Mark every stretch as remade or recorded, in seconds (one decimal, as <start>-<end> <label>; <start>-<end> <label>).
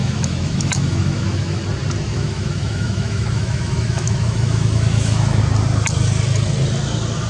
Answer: 0.0-1.6 remade; 1.6-2.1 recorded; 2.1-5.4 remade; 5.4-7.3 recorded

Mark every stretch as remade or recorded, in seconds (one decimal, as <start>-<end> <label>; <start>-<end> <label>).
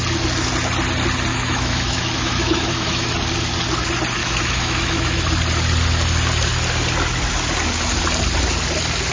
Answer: 0.0-1.3 recorded; 1.3-3.1 remade; 3.1-4.2 recorded; 4.2-5.2 remade; 5.2-9.1 recorded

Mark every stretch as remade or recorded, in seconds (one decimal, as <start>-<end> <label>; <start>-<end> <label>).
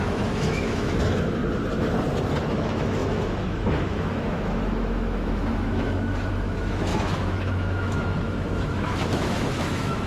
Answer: 0.0-1.4 remade; 1.4-2.5 recorded; 2.5-10.1 remade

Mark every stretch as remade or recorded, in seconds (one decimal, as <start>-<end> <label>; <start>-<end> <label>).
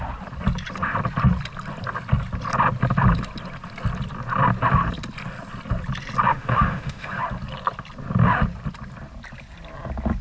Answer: 0.0-6.3 recorded; 6.3-7.2 remade; 7.2-10.2 recorded